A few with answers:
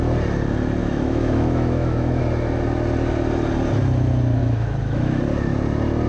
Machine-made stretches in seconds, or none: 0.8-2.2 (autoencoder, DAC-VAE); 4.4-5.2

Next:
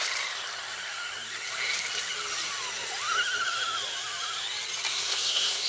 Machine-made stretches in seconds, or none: 4.9-5.7 (codec, SNAC)

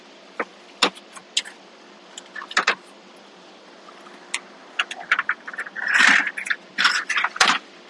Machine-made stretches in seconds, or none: none

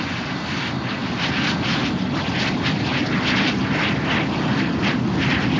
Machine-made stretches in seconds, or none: none

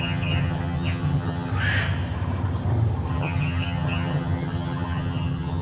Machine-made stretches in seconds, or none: 0.0-1.5 (vocoder, HiFi-GAN); 3.1-5.6

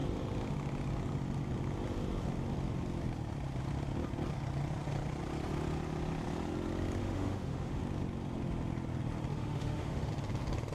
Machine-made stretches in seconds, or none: 7.0-7.8 (autoencoder, DAC-VAE); 9.3-10.1

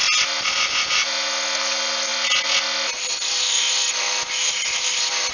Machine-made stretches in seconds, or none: none